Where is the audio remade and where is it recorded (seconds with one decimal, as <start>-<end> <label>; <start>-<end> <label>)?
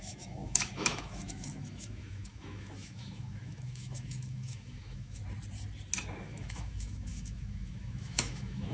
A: 0.0-5.2 remade; 5.2-6.2 recorded; 6.2-8.7 remade